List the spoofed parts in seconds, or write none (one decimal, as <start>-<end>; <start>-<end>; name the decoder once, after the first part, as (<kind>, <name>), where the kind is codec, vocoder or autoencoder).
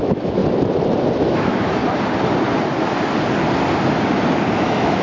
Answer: 0.0-0.4 (autoencoder, DAC-VAE); 1.2-1.8; 4.5-5.0